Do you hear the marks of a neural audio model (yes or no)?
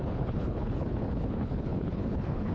yes